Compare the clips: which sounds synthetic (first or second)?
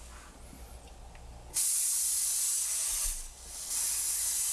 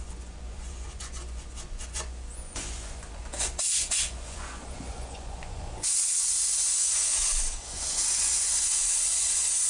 second